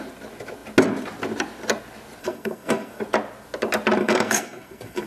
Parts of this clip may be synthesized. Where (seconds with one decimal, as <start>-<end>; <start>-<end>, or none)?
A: 2.2-3.0; 4.0-5.1